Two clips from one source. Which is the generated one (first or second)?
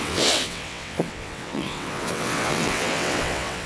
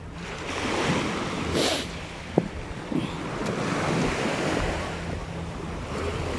first